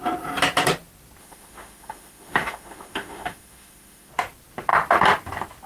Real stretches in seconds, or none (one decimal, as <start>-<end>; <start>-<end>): 0.0-1.2; 4.1-5.7